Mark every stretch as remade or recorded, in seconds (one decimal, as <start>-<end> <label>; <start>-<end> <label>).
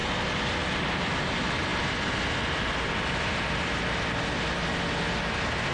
0.0-5.7 recorded